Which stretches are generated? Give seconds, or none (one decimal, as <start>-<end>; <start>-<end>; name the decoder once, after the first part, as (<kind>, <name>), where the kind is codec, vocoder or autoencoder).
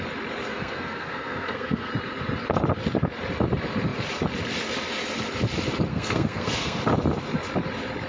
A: 0.5-1.9 (codec, SNAC); 5.9-6.8